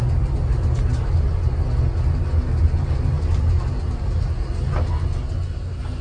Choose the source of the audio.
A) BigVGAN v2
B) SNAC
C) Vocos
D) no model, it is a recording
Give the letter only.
D